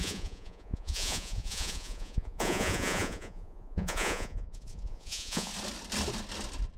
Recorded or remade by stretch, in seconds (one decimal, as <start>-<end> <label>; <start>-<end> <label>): 0.0-5.5 remade; 5.5-6.8 recorded

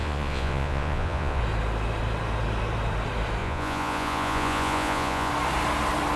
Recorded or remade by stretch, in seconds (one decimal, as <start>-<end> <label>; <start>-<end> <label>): 0.0-1.4 remade; 1.4-3.4 recorded; 3.4-5.3 remade; 5.3-6.2 recorded

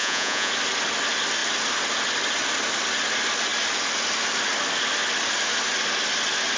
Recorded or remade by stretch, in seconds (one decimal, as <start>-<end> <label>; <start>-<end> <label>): 0.0-0.5 remade; 0.5-6.6 recorded

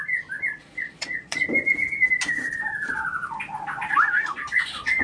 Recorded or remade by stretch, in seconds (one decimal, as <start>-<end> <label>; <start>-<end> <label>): 0.0-0.6 recorded; 0.6-1.4 remade; 1.4-5.0 recorded